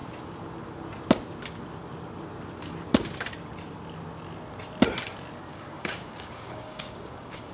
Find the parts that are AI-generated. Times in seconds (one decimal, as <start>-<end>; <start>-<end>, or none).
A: 5.5-7.5